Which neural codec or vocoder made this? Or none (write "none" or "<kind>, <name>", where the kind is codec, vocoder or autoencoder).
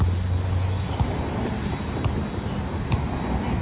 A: none